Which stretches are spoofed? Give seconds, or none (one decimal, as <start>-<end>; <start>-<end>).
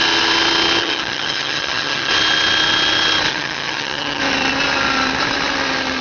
0.8-2.1; 3.3-4.2